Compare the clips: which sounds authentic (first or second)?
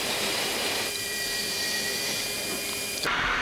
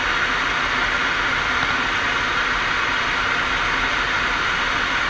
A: second